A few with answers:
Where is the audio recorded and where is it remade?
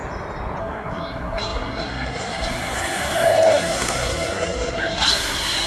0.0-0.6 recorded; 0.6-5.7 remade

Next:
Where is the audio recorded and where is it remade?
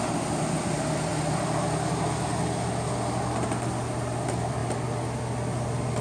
0.0-6.0 recorded